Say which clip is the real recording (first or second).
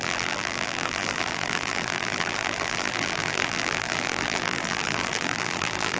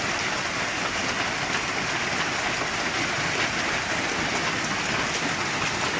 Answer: second